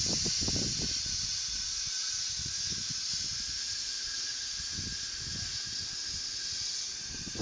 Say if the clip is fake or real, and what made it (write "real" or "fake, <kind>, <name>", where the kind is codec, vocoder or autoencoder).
real